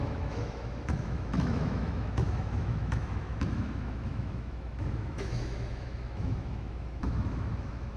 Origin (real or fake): fake